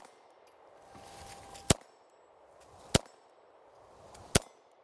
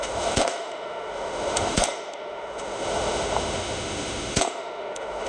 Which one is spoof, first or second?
second